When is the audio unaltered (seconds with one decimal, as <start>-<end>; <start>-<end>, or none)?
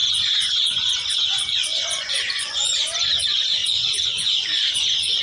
0.9-1.3; 2.8-3.6